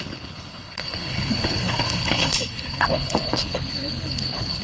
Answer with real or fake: fake